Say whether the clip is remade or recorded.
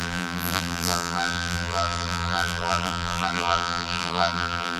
remade